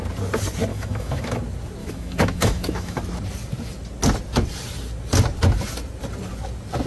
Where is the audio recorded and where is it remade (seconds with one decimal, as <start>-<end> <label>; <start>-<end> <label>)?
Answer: 0.0-0.7 recorded; 0.7-1.4 remade; 1.4-1.8 recorded; 1.8-3.0 remade; 3.0-6.9 recorded

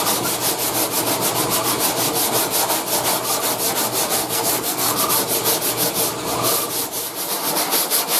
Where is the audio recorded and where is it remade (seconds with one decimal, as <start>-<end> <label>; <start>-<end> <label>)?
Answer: 0.0-4.2 recorded; 4.2-5.0 remade; 5.0-8.2 recorded

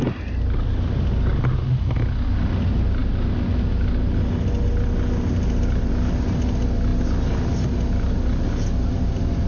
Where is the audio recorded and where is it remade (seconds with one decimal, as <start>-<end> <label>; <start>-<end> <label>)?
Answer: 0.0-9.5 recorded

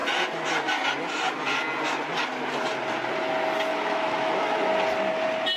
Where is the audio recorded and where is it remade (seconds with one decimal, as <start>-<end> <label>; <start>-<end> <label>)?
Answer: 0.0-3.7 recorded; 3.7-4.7 remade; 4.7-5.6 recorded

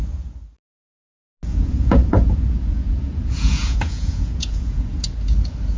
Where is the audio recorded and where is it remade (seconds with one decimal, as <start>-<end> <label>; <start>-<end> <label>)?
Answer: 0.0-1.5 recorded; 1.5-5.0 remade; 5.0-5.8 recorded

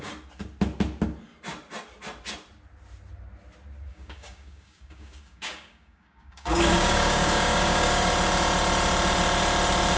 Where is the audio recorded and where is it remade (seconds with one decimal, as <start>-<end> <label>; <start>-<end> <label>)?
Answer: 0.0-3.9 recorded; 3.9-8.1 remade; 8.1-10.0 recorded